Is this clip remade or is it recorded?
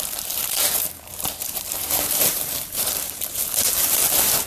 remade